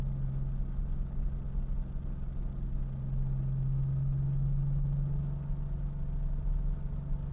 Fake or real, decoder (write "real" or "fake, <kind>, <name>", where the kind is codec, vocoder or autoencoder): real